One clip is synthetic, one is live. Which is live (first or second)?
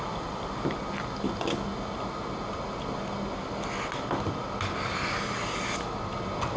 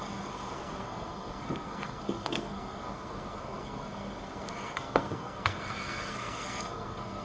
first